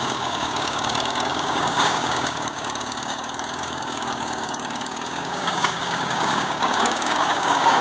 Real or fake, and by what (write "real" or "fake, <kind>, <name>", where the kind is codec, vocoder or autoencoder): fake, codec, DAC